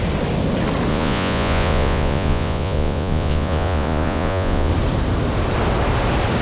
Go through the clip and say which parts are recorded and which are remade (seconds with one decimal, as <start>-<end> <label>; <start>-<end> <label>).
0.0-0.9 recorded; 0.9-4.7 remade; 4.7-6.4 recorded